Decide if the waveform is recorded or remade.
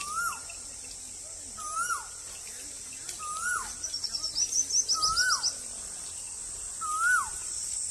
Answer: recorded